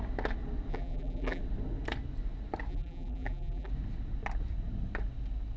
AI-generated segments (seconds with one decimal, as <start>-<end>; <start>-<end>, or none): 0.7-1.4; 2.7-3.7